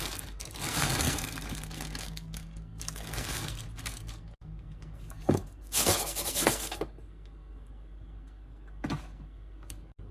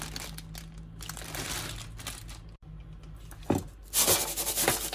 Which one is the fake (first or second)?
first